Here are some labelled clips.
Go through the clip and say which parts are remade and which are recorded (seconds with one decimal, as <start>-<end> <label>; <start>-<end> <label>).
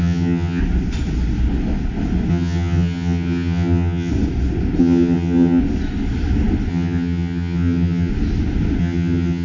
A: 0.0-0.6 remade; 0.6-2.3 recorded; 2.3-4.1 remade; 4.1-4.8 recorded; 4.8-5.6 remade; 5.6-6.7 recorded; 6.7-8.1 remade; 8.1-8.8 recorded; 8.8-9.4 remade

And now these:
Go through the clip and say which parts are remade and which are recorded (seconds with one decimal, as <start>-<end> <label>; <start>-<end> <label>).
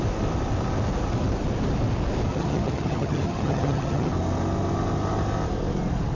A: 0.0-2.3 recorded; 2.3-4.1 remade; 4.1-6.1 recorded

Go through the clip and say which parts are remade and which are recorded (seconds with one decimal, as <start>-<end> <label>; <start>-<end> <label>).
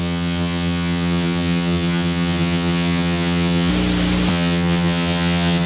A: 0.0-3.7 remade; 3.7-4.3 recorded; 4.3-5.7 remade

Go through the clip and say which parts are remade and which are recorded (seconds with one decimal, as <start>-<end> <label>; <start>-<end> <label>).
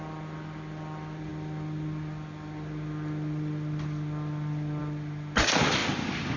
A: 0.0-6.4 recorded